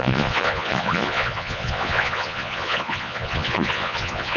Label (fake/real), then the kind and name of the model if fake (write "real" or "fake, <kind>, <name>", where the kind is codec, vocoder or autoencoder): fake, vocoder, Vocos